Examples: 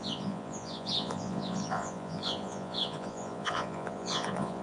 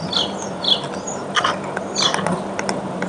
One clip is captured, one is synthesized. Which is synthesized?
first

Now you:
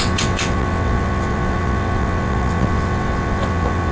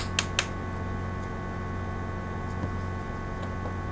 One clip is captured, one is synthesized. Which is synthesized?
first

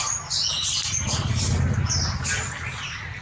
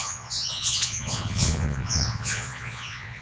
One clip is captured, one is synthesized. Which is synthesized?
second